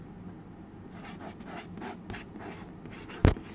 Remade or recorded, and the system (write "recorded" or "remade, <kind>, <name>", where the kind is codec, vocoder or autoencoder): recorded